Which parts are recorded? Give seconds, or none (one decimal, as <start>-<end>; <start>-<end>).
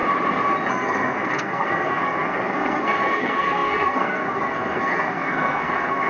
0.0-0.7